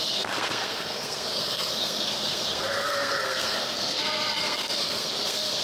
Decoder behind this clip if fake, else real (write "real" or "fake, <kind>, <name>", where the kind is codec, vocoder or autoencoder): fake, codec, SNAC